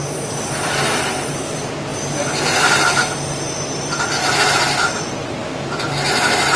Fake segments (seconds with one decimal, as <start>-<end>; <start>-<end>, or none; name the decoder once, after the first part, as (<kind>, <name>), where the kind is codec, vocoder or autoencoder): none